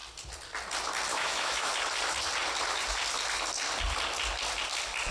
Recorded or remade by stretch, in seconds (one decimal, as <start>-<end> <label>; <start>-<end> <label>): 0.0-1.1 recorded; 1.1-1.7 remade; 1.7-5.1 recorded